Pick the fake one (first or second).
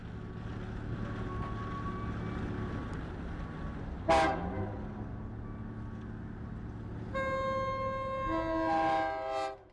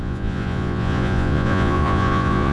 second